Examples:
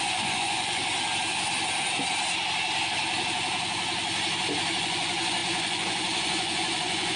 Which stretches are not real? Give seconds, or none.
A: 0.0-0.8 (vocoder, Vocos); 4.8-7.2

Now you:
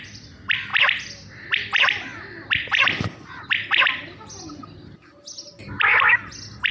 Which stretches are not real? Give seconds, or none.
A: none